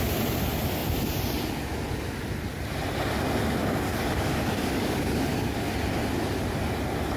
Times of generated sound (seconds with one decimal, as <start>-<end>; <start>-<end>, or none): 3.6-5.7